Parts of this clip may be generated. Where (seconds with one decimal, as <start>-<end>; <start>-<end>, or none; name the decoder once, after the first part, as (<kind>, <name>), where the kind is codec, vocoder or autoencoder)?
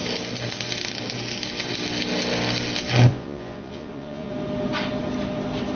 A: 3.1-4.3 (vocoder, Vocos)